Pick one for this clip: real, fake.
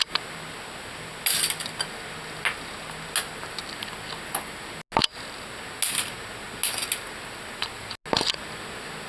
real